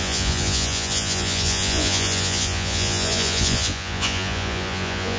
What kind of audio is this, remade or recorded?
remade